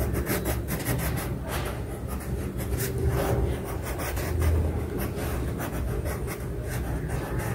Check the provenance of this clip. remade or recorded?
recorded